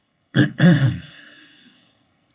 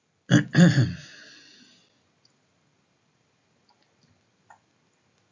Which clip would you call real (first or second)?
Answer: second